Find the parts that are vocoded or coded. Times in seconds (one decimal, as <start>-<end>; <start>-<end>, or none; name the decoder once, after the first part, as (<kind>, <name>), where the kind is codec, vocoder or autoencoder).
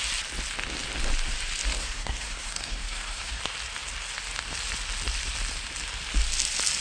1.8-3.4 (codec, SNAC)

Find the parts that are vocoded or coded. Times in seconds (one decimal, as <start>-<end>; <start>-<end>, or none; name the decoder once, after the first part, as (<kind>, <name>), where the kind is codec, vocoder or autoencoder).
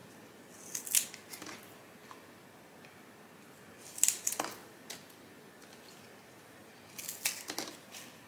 none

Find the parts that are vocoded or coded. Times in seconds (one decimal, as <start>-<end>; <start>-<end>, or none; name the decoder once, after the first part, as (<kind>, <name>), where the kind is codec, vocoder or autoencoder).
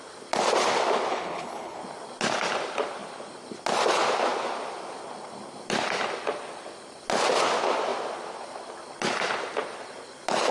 1.1-1.8 (codec, HILCodec)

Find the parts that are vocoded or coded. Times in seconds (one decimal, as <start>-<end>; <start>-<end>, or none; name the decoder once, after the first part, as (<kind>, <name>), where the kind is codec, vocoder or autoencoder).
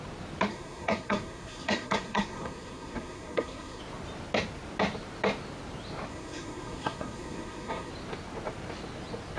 0.5-3.8 (codec, SNAC); 6.1-7.9